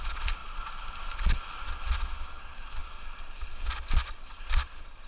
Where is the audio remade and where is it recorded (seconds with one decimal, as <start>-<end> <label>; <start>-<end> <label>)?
0.0-5.1 recorded